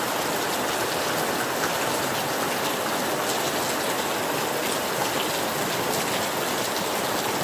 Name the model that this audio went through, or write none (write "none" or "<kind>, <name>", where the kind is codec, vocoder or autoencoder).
none